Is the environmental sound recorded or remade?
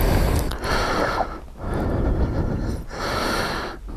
recorded